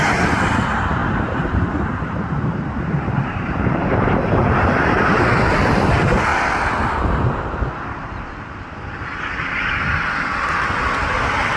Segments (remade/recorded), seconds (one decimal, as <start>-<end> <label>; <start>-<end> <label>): 0.0-1.0 recorded; 1.0-5.2 remade; 5.2-11.6 recorded